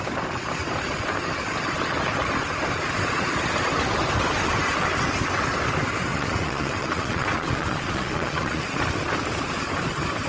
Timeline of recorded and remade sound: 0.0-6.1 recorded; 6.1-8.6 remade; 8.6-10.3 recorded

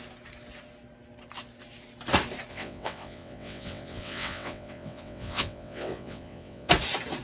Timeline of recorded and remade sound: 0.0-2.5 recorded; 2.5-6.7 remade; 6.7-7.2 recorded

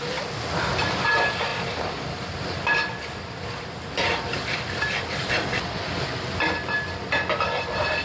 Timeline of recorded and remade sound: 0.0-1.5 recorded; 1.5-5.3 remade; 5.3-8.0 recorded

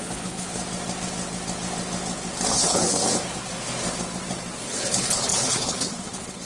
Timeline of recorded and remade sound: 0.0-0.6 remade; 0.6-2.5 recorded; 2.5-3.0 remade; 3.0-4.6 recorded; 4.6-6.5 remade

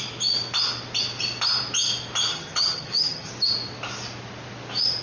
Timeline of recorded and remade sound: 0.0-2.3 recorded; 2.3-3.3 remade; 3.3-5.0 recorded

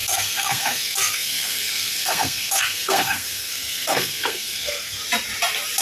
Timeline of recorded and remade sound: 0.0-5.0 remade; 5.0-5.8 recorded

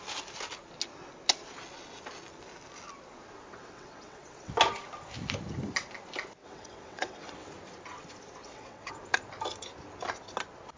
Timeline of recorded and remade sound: 0.0-3.5 recorded; 3.5-4.5 remade; 4.5-6.4 recorded; 6.4-7.5 remade; 7.5-8.4 recorded; 8.4-9.0 remade; 9.0-10.8 recorded